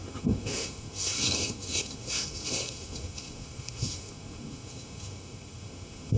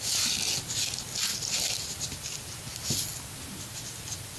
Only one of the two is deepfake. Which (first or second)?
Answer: first